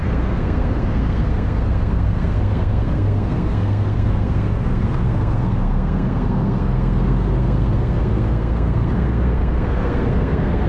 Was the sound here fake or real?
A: fake